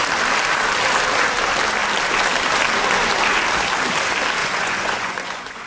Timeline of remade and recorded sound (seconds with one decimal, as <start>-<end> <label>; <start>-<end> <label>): 0.0-4.4 recorded; 4.4-5.7 remade